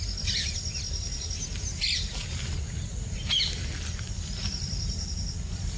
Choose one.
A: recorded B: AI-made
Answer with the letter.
A